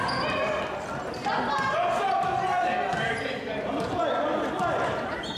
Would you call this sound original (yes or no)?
yes